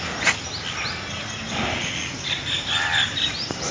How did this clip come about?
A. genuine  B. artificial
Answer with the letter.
A